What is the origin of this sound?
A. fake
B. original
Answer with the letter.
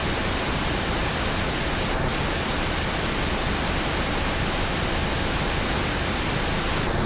B